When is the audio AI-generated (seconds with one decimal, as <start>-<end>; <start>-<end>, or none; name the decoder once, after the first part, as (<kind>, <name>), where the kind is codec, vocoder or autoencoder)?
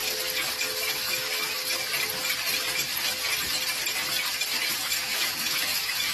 0.7-1.6 (autoencoder, DAC-VAE); 4.7-6.1